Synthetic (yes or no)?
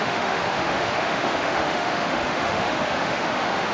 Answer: yes